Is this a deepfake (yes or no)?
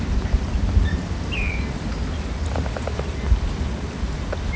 no